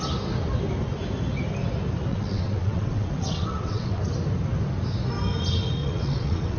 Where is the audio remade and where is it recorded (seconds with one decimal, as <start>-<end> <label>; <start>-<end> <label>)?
0.0-2.1 recorded; 2.1-4.0 remade; 4.0-5.8 recorded; 5.8-6.6 remade